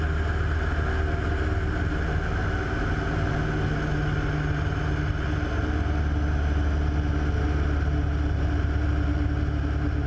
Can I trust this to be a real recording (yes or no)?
yes